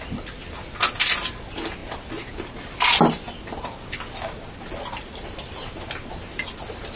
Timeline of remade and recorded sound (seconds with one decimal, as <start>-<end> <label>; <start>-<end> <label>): 0.0-7.0 recorded